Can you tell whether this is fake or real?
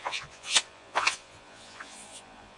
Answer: fake